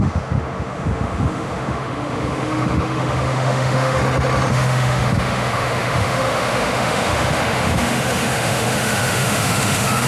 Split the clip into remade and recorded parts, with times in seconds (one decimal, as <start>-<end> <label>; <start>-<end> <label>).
0.0-4.0 remade; 4.0-4.5 recorded; 4.5-10.1 remade